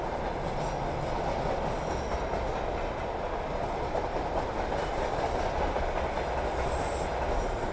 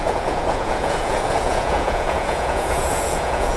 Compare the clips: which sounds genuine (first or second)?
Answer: first